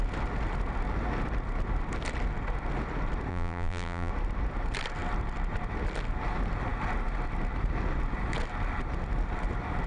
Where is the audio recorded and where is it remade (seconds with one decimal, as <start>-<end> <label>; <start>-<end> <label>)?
0.0-3.3 recorded; 3.3-4.1 remade; 4.1-9.9 recorded